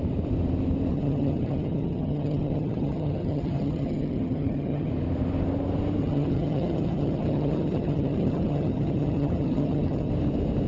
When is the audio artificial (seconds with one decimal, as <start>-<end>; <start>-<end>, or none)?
0.9-4.9; 6.0-10.1